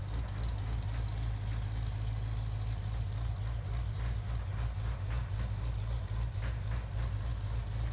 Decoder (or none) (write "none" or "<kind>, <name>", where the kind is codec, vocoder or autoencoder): none